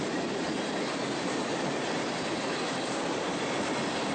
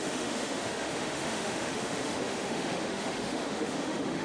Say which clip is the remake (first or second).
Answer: second